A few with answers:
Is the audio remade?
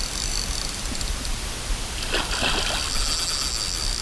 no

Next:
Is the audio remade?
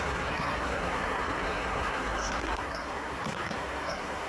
yes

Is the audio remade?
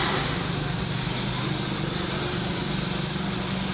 no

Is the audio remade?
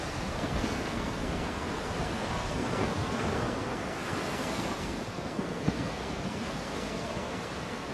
yes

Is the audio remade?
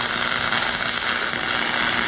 no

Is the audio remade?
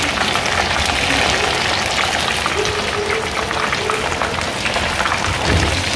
no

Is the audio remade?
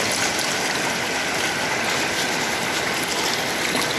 no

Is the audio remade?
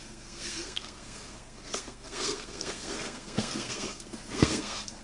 yes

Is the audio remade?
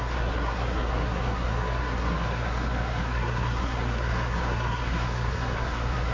yes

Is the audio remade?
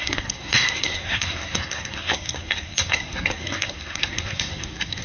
yes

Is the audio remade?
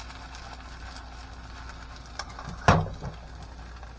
no